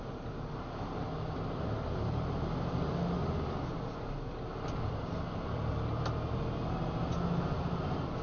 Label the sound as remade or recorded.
recorded